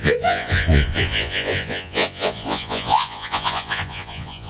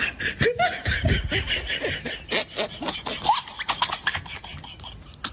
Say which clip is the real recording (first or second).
second